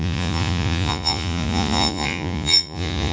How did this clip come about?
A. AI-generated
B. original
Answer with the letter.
A